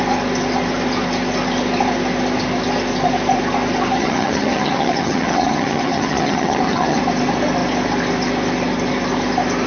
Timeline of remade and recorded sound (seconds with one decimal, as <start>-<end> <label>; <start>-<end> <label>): 0.0-4.0 recorded; 4.0-7.0 remade; 7.0-9.7 recorded